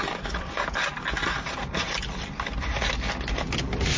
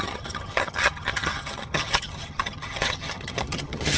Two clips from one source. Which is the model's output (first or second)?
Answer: second